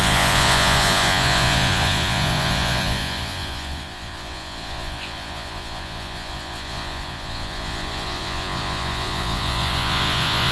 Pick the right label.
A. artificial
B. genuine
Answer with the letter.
A